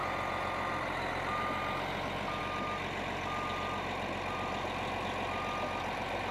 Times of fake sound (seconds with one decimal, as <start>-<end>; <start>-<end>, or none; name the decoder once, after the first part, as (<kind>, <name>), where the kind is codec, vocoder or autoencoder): none